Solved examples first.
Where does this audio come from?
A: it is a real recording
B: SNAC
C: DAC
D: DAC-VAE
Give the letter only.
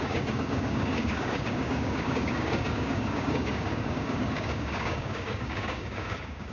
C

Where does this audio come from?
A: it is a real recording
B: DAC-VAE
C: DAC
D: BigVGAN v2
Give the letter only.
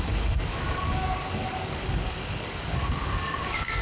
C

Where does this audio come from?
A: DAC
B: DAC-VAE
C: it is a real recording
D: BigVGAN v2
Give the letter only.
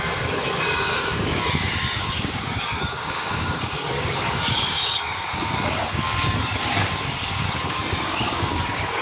A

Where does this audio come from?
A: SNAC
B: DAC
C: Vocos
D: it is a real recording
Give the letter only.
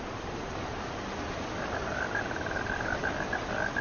D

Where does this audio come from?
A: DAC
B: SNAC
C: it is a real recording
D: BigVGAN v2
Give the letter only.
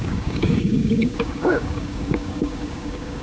A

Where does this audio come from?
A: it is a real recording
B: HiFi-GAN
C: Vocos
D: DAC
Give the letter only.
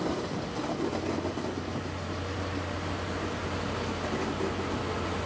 A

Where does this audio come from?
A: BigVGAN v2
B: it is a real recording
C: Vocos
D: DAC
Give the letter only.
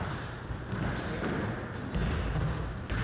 B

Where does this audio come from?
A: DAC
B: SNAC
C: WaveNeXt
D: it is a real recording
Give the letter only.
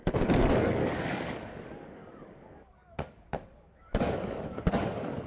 A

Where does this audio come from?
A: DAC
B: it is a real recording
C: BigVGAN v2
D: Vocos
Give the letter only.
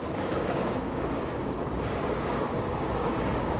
A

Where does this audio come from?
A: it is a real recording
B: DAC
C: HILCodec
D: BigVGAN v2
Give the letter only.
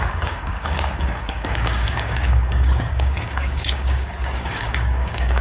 B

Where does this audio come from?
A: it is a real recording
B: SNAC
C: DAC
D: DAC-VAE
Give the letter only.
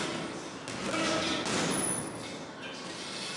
A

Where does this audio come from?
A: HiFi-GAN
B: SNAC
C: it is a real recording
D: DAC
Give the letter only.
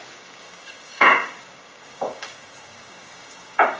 D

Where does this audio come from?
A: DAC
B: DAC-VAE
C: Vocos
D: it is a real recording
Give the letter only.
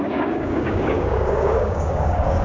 A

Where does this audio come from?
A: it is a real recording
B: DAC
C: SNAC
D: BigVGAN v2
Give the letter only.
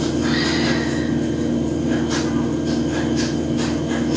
A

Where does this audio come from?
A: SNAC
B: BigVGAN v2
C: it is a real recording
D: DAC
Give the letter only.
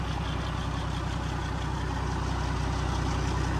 C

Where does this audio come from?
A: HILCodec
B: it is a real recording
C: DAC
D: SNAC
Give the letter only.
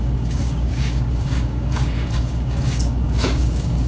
C